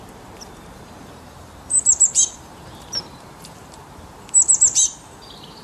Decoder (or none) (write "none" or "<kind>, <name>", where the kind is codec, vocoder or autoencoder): vocoder, BigVGAN v2